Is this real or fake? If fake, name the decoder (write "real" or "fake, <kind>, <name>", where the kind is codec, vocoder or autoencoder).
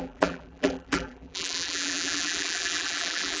fake, vocoder, BigVGAN v2